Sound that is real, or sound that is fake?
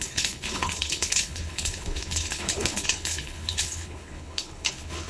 fake